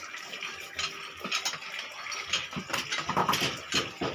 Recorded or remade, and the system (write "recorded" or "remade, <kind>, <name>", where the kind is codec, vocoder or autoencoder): recorded